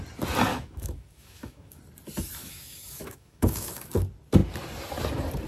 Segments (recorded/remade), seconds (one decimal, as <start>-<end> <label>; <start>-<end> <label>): 0.0-0.5 recorded; 0.5-1.8 remade; 1.8-2.4 recorded; 2.4-3.9 remade; 3.9-5.5 recorded